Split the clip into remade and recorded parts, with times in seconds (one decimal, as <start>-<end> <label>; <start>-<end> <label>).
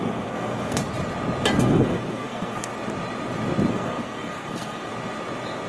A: 0.0-0.8 remade; 0.8-1.6 recorded; 1.6-2.7 remade; 2.7-3.7 recorded; 3.7-4.9 remade; 4.9-5.7 recorded